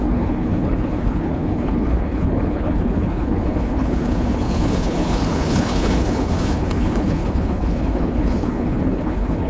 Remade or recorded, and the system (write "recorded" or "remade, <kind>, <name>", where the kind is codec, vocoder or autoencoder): remade, codec, HILCodec